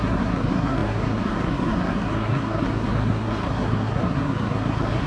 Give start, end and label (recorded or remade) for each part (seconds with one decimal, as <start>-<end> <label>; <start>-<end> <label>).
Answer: 0.0-5.1 remade